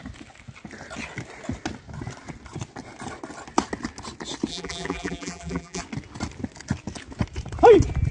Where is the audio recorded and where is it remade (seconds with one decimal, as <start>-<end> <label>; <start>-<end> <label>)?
0.0-4.5 recorded; 4.5-5.8 remade; 5.8-8.1 recorded